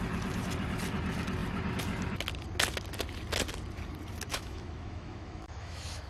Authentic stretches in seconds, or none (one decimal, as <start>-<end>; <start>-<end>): 0.0-4.3